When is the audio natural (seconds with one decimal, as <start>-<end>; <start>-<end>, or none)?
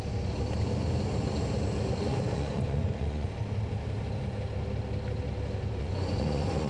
0.0-2.0; 3.3-5.8